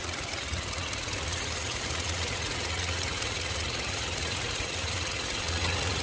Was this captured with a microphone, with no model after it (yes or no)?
no